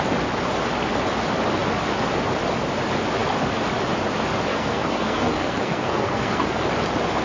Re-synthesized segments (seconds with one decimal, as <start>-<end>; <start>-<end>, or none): 4.5-6.6